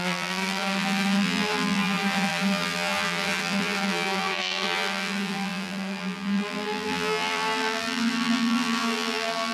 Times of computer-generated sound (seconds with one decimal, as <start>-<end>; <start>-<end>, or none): 0.0-9.5